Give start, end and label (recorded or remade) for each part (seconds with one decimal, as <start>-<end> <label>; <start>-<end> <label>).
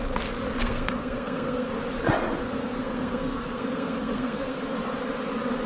0.0-0.6 recorded; 0.6-1.7 remade; 1.7-2.6 recorded; 2.6-4.6 remade; 4.6-5.7 recorded